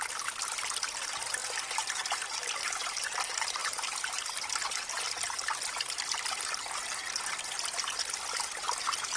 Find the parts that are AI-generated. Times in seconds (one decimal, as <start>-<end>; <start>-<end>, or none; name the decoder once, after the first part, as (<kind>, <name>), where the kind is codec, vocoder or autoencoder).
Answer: 1.4-2.0 (vocoder, BigVGAN v2)